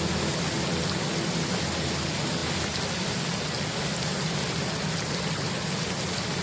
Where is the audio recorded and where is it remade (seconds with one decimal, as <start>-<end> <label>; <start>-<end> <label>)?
0.0-6.4 recorded